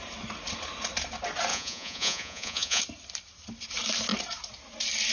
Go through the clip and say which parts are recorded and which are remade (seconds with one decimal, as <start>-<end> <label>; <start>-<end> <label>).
0.0-1.5 recorded; 1.5-2.8 remade; 2.8-5.1 recorded